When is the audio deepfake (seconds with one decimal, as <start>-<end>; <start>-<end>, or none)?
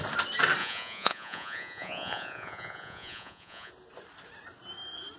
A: 0.6-3.7